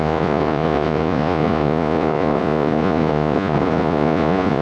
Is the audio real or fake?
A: fake